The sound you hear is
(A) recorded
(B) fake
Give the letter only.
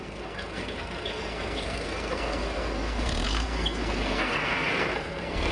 B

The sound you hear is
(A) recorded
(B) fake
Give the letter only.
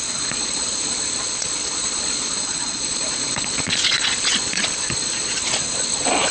B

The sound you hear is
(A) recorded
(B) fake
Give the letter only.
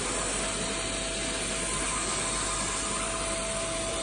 A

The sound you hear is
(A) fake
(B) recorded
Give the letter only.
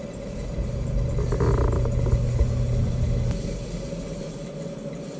B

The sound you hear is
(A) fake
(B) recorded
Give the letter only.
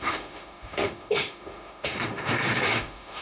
A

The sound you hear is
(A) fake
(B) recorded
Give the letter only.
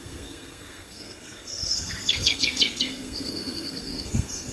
A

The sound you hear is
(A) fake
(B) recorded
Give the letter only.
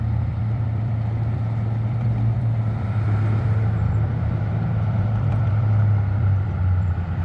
A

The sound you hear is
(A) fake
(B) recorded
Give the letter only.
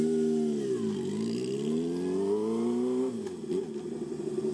B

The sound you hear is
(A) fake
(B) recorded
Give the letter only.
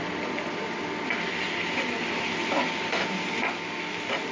B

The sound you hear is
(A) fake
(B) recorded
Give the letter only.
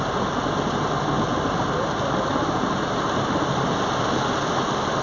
B